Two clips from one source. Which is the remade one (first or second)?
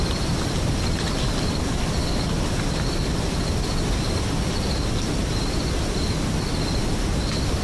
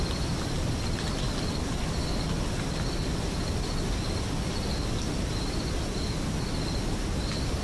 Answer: first